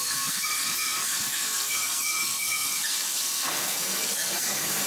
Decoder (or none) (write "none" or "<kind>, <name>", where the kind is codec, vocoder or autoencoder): codec, SNAC